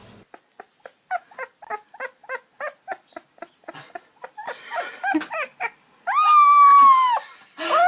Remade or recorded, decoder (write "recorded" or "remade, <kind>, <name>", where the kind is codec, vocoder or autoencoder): recorded